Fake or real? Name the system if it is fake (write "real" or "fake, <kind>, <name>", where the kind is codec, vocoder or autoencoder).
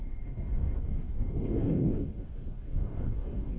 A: fake, codec, DAC